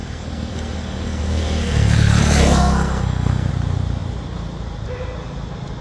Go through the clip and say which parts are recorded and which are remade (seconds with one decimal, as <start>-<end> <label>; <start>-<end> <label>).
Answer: 0.0-3.5 remade; 3.5-5.8 recorded